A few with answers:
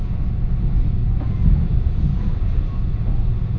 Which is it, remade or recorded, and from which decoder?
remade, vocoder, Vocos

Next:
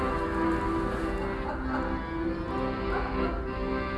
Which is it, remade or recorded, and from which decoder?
recorded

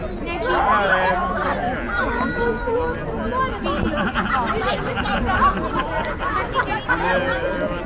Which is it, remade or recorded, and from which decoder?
recorded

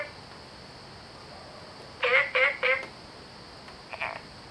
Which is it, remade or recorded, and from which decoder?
recorded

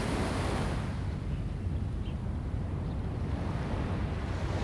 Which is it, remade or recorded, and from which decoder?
recorded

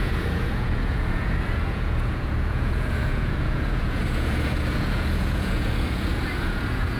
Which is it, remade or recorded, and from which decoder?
remade, vocoder, Vocos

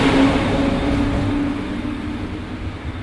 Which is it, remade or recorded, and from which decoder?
recorded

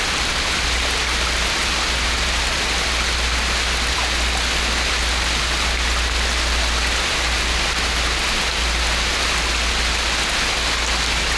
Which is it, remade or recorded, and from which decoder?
recorded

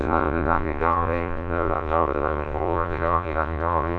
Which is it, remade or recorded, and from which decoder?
remade, vocoder, Vocos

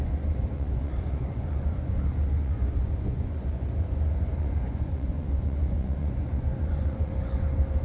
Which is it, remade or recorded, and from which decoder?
remade, vocoder, Vocos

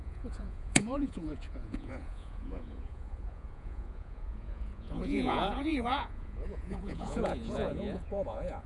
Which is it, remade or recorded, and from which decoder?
remade, vocoder, Vocos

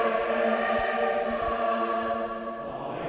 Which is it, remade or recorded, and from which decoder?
recorded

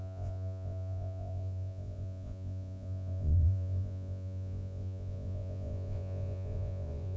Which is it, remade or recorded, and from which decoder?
remade, vocoder, Vocos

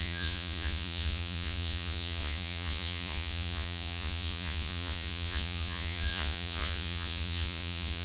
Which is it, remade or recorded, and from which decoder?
remade, vocoder, Vocos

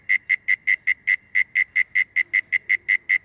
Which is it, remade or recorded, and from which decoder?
recorded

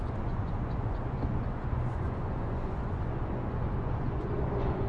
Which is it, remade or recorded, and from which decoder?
remade, vocoder, Vocos